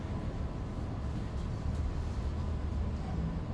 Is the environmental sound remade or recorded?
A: recorded